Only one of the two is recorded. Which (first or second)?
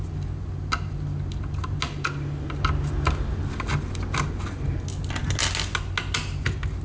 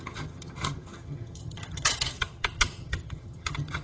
first